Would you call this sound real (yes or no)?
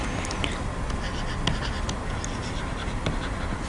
yes